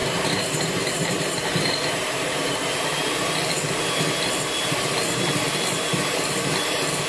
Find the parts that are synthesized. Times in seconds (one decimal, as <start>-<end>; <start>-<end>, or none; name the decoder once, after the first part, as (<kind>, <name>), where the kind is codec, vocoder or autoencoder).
0.0-3.3 (vocoder, BigVGAN v2)